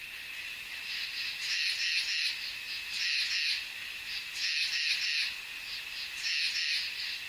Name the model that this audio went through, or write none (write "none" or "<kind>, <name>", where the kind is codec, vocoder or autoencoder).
none